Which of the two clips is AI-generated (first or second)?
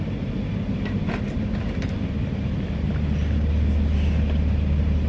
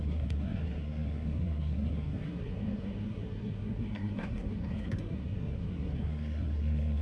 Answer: second